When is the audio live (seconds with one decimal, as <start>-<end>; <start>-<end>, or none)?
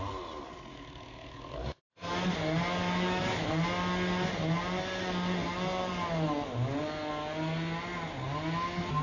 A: 0.0-0.7; 2.1-2.8; 3.5-9.0